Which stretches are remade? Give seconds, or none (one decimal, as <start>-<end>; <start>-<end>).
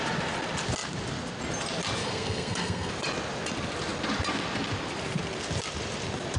2.0-2.9